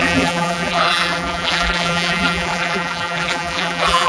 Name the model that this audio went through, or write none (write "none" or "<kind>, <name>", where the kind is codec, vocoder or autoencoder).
vocoder, BigVGAN v2